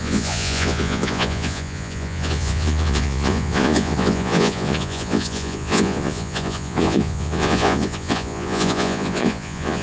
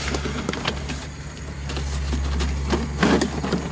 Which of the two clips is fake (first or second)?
first